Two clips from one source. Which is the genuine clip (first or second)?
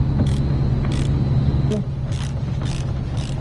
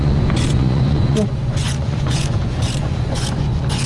first